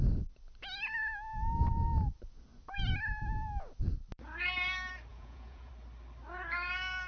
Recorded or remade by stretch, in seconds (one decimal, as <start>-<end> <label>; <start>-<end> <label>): 0.0-5.1 recorded; 5.1-5.7 remade; 5.7-7.1 recorded

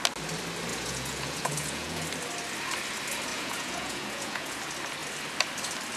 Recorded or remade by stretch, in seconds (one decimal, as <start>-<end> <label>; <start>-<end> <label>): 0.0-0.7 recorded; 0.7-2.0 remade; 2.0-3.3 recorded; 3.3-4.6 remade; 4.6-6.0 recorded

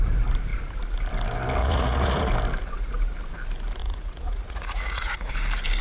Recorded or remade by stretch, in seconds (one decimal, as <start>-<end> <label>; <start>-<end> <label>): 0.0-1.6 recorded; 1.6-2.3 remade; 2.3-3.8 recorded; 3.8-5.3 remade; 5.3-5.8 recorded

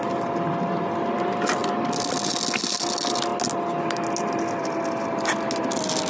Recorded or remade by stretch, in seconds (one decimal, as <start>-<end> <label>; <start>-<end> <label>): 0.0-6.1 recorded

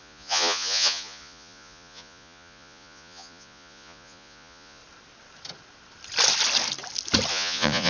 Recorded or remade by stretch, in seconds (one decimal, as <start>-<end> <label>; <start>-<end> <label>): 0.0-4.8 remade; 4.8-7.3 recorded; 7.3-7.9 remade

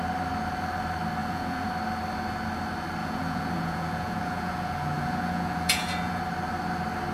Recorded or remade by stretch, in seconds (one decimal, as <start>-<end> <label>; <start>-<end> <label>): 0.0-1.2 recorded; 1.2-1.7 remade; 1.7-3.0 recorded; 3.0-6.2 remade; 6.2-7.1 recorded

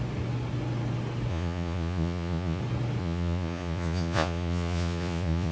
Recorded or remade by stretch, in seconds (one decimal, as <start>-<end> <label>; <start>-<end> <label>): 0.0-1.3 recorded; 1.3-2.6 remade; 2.6-3.0 recorded; 3.0-5.5 remade